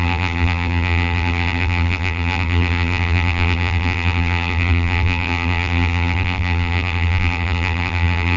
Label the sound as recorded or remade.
remade